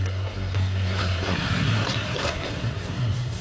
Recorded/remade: remade